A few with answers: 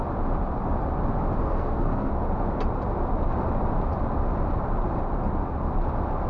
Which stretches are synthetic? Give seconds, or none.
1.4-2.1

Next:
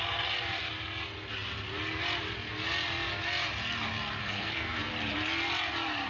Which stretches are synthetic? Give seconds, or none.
4.2-4.9

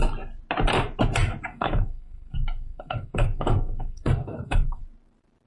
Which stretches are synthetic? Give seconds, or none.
1.5-4.8

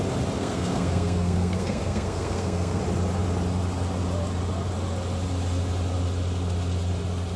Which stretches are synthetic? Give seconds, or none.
0.4-2.8